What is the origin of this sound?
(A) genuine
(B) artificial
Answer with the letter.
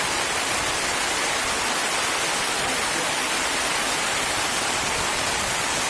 A